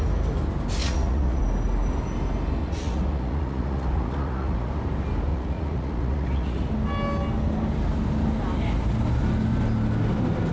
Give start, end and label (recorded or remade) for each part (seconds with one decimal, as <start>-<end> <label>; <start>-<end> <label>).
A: 0.0-0.8 recorded; 0.8-1.4 remade; 1.4-2.6 recorded; 2.6-4.7 remade; 4.7-5.3 recorded; 5.3-6.7 remade; 6.7-10.5 recorded